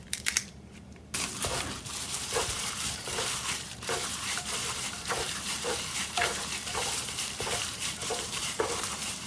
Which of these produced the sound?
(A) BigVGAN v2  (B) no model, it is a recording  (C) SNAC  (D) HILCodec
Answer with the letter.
A